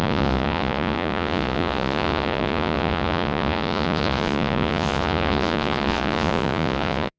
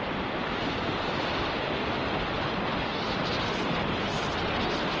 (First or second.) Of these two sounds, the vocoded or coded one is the first